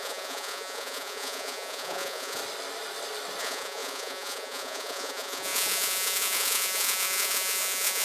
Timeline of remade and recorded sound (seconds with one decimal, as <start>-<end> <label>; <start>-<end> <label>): 0.0-2.4 remade; 2.4-3.4 recorded; 3.4-8.0 remade